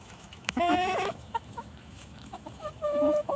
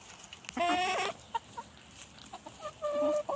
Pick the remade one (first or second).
first